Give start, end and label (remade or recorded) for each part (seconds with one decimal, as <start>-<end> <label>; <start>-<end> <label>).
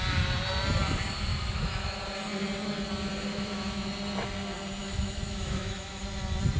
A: 0.0-1.3 recorded; 1.3-2.0 remade; 2.0-3.3 recorded; 3.3-3.9 remade; 3.9-4.8 recorded; 4.8-6.0 remade; 6.0-6.6 recorded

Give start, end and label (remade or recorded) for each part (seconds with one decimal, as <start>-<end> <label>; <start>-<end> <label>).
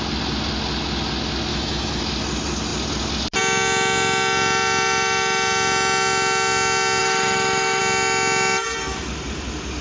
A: 0.0-1.5 recorded; 1.5-2.0 remade; 2.0-7.0 recorded; 7.0-7.8 remade; 7.8-9.8 recorded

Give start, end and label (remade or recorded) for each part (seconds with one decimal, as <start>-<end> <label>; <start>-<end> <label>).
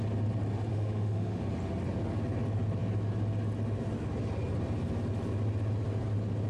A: 0.0-0.7 recorded; 0.7-1.4 remade; 1.4-6.5 recorded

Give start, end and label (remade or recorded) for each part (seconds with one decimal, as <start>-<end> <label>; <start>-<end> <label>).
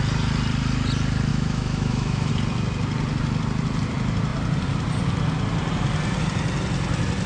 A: 0.0-1.3 recorded; 1.3-2.3 remade; 2.3-7.3 recorded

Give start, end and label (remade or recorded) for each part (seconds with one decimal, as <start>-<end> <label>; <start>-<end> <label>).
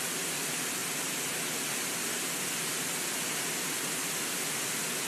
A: 0.0-5.1 recorded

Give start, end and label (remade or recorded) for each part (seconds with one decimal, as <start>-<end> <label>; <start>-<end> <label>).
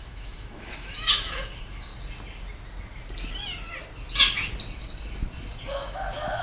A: 0.0-1.9 remade; 1.9-5.7 recorded; 5.7-6.4 remade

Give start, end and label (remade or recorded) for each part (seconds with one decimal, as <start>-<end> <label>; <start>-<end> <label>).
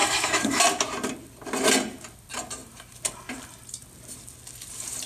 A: 0.0-0.6 remade; 0.6-5.1 recorded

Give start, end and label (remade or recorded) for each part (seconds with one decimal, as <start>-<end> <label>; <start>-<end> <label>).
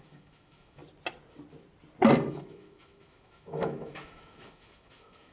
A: 0.0-0.8 remade; 0.8-2.3 recorded; 2.3-5.3 remade